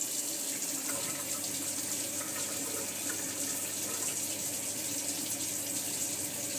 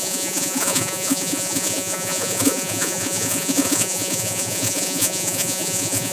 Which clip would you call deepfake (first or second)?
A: second